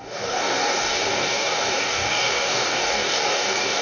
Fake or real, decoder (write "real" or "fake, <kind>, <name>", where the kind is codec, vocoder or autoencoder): fake, codec, DAC